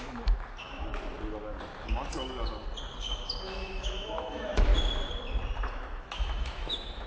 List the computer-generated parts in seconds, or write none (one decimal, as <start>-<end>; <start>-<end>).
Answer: 0.0-0.9; 3.4-4.7; 5.7-7.1